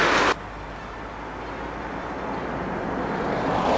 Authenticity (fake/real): real